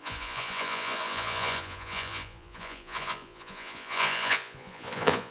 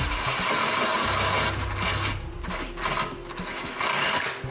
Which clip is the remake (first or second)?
first